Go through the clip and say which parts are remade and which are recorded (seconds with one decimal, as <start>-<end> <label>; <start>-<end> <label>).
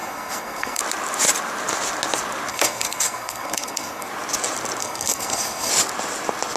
0.0-0.8 remade; 0.8-2.5 recorded; 2.5-4.1 remade; 4.1-4.8 recorded; 4.8-5.7 remade; 5.7-6.6 recorded